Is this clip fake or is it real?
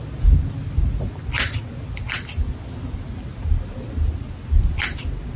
real